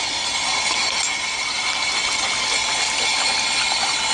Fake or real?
real